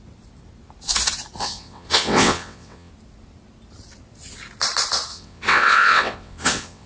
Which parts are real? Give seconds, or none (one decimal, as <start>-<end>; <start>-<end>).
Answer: 0.0-1.4; 2.9-5.1